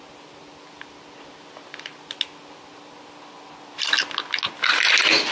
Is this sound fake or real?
real